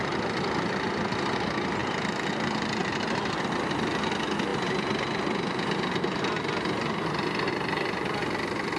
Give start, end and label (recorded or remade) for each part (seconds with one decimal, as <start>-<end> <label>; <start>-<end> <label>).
0.0-4.5 remade; 4.5-7.5 recorded; 7.5-8.8 remade